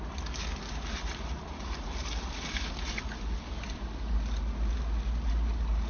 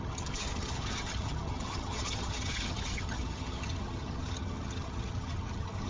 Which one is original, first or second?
first